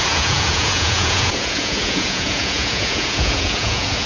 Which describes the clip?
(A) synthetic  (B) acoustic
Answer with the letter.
A